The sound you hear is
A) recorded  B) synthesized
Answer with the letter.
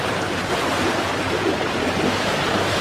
B